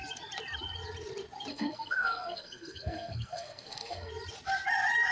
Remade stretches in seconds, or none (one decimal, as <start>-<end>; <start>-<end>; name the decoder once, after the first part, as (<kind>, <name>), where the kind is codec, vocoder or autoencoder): 1.5-4.1 (codec, SNAC)